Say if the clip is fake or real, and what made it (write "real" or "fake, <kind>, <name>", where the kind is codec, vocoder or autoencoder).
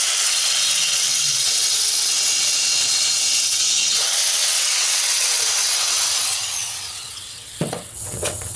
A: fake, vocoder, WaveNeXt